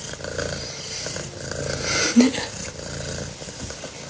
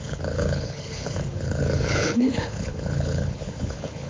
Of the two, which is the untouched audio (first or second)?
first